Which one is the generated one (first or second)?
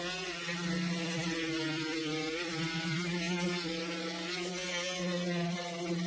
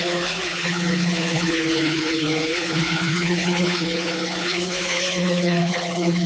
second